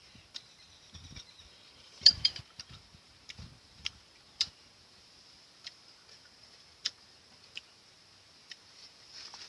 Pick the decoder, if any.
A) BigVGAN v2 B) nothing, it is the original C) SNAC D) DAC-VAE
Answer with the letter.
A